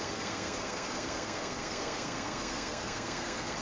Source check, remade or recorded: remade